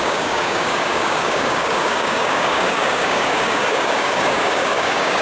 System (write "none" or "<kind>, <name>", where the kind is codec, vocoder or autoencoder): codec, DAC